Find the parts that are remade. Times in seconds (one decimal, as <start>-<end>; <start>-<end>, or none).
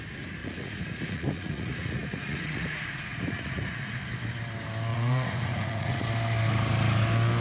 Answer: 0.4-4.0; 4.9-6.0